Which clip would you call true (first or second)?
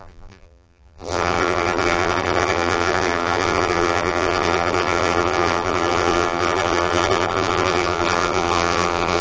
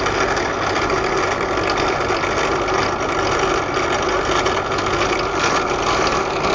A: second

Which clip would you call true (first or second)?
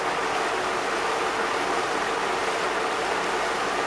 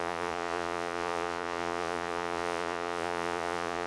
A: first